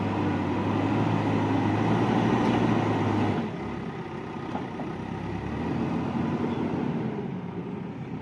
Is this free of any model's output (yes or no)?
yes